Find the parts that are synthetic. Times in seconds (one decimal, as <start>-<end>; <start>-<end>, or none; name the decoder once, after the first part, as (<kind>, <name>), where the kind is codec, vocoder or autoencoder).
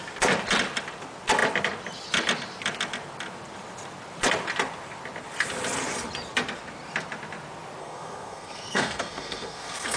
7.8-10.0 (codec, SNAC)